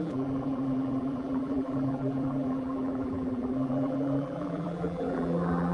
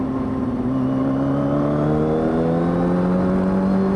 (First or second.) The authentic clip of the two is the second